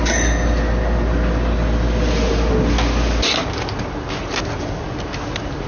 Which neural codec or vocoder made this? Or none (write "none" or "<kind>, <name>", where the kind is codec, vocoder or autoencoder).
none